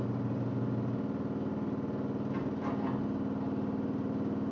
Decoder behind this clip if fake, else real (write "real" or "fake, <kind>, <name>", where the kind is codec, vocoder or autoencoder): real